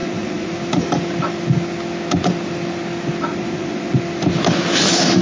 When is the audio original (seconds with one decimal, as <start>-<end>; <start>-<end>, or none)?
0.5-3.3; 4.0-5.2